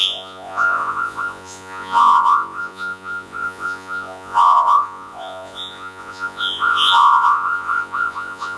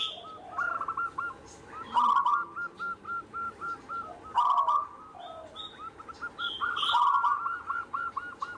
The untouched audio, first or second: second